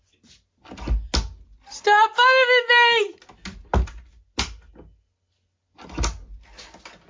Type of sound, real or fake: real